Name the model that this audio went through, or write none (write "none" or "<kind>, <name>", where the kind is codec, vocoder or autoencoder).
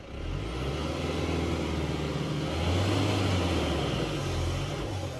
none